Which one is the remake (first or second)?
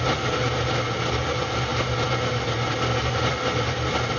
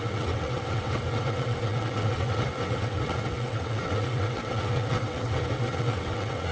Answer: second